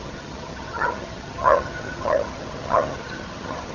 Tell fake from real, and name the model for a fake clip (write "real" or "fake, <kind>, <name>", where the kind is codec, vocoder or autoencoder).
fake, vocoder, HiFi-GAN